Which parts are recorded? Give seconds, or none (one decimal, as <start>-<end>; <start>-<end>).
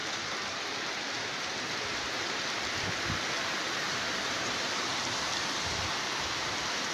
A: 0.0-3.2; 4.9-5.4